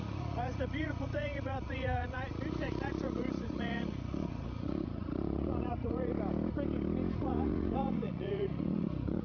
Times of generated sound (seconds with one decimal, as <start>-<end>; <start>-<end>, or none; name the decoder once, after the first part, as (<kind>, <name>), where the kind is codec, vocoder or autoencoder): 0.0-6.1 (vocoder, Vocos); 7.2-9.2